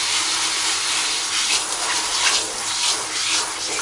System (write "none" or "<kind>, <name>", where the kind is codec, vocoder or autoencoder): none